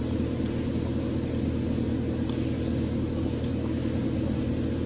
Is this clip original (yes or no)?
yes